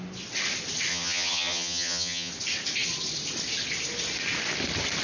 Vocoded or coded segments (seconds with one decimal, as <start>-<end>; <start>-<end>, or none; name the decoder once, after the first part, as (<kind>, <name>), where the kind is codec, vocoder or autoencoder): 0.9-2.3 (vocoder, HiFi-GAN)